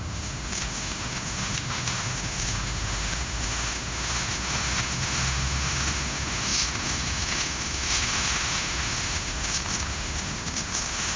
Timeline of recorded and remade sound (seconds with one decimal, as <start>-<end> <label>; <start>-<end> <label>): 0.0-11.2 remade